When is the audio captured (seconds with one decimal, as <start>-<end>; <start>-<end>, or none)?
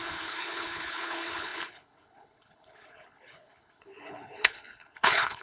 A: none